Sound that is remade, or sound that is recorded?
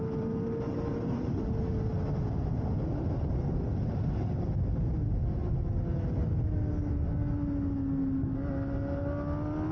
recorded